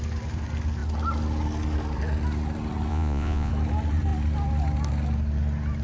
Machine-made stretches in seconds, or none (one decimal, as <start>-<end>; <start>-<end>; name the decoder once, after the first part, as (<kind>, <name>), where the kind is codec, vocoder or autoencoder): 2.9-3.5 (vocoder, Vocos)